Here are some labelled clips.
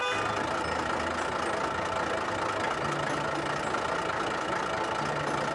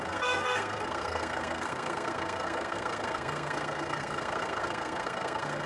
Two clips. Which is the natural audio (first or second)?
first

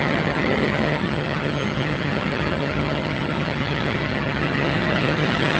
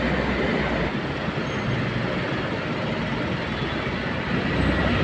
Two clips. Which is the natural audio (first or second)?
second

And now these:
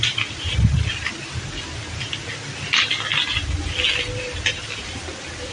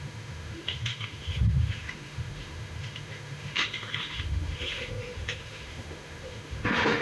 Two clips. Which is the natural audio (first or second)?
first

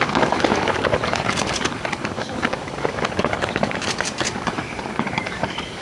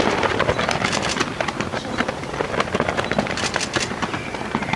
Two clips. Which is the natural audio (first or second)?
second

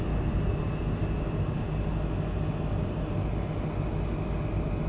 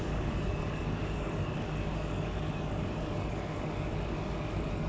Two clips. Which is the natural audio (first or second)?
first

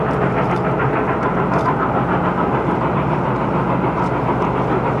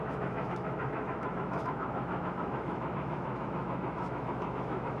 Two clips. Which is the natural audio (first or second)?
first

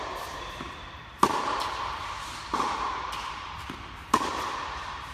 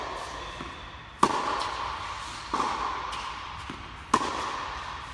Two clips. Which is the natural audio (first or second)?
second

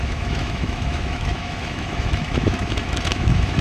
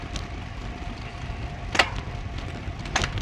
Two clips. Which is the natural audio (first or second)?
second